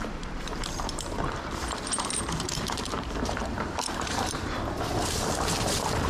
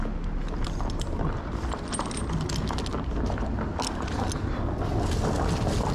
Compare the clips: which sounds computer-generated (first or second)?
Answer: first